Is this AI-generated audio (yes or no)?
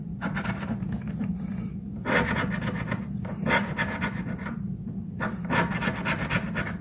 yes